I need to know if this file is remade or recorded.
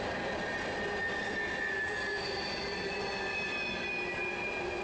recorded